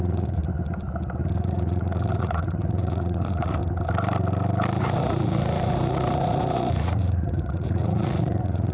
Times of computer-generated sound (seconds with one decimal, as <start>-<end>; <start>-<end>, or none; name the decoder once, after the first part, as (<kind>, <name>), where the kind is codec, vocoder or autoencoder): 0.0-0.4 (vocoder, Vocos); 1.4-3.6; 4.8-8.7